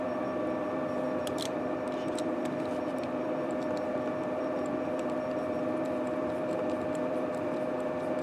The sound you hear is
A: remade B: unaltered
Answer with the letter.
A